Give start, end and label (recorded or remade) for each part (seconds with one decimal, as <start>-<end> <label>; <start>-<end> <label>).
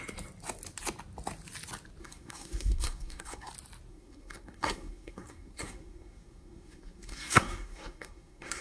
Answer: 0.0-2.0 recorded; 2.0-3.5 remade; 3.5-3.9 recorded; 3.9-8.6 remade